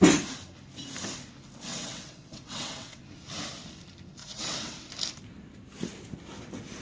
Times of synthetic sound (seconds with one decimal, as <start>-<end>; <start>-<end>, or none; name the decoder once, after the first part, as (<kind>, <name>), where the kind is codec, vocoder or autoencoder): 1.7-3.0 (vocoder, WaveNeXt); 4.2-4.9